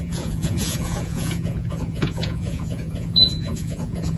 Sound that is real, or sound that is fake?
fake